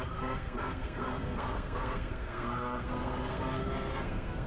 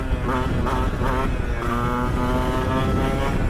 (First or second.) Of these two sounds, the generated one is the first